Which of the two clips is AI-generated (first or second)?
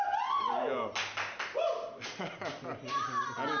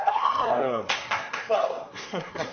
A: second